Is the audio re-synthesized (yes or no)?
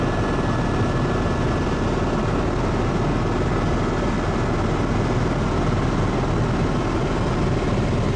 no